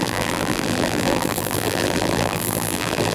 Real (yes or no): no